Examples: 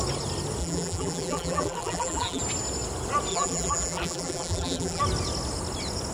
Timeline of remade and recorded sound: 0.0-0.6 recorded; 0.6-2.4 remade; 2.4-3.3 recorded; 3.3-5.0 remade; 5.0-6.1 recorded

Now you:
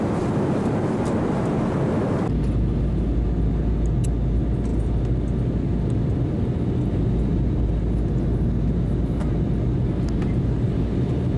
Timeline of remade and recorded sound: 0.0-11.4 recorded